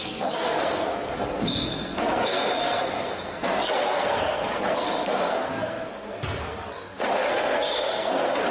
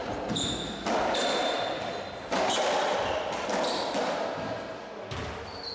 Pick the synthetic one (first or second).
first